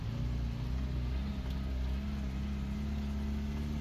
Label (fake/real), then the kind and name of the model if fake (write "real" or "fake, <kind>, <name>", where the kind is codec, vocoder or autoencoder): real